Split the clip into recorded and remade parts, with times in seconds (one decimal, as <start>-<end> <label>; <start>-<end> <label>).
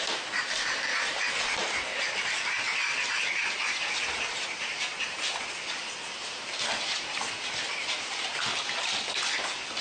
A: 0.0-9.8 recorded